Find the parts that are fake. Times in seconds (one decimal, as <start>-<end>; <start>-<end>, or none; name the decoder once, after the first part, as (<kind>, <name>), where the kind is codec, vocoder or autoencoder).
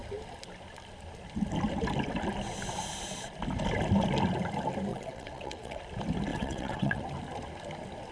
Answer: 4.9-5.8 (vocoder, WaveNeXt); 6.3-7.0